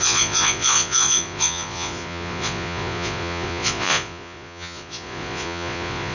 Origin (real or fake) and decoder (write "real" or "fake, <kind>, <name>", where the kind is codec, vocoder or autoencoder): fake, vocoder, Vocos